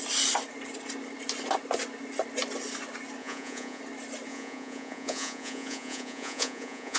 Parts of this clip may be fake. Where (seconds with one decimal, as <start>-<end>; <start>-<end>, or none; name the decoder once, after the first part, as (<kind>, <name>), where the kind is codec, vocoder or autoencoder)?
3.2-3.8 (vocoder, Vocos); 4.3-7.0